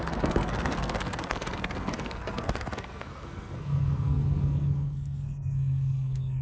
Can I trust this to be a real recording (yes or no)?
no